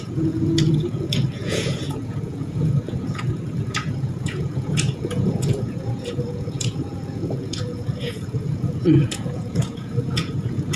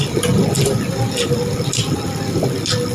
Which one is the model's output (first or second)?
first